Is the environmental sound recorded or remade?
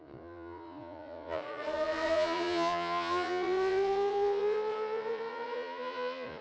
remade